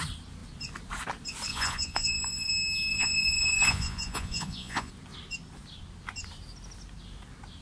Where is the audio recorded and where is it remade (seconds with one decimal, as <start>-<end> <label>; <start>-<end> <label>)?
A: 0.0-1.5 recorded; 1.5-2.5 remade; 2.5-2.9 recorded; 2.9-4.9 remade; 4.9-7.6 recorded